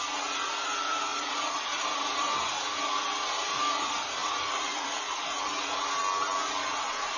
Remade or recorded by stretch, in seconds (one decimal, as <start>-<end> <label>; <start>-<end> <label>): 0.0-1.1 recorded; 1.1-1.8 remade; 1.8-4.2 recorded; 4.2-5.2 remade; 5.2-7.2 recorded